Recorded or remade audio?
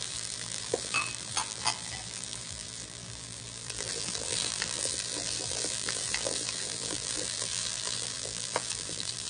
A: remade